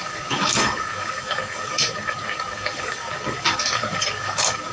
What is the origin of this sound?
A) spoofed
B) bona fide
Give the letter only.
A